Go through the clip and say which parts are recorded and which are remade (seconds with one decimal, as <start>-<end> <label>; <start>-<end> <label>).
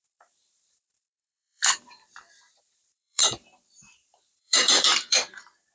0.0-5.7 remade